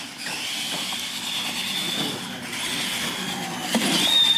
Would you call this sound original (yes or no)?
yes